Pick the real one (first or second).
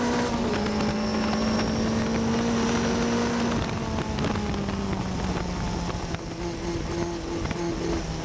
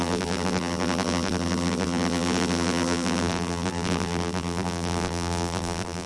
first